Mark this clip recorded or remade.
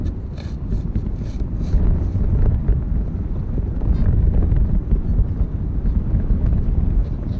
recorded